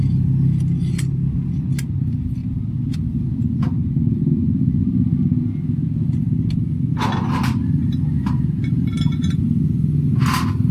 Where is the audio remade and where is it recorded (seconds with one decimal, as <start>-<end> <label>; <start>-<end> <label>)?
0.0-10.7 recorded